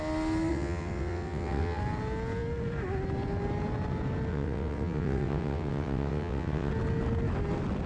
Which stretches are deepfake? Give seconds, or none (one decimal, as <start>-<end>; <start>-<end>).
0.5-1.8; 4.3-6.7